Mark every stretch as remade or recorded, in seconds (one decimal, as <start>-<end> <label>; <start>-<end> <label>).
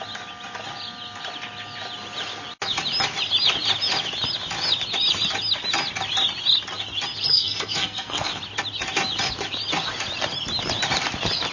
0.0-7.3 recorded; 7.3-8.4 remade; 8.4-11.5 recorded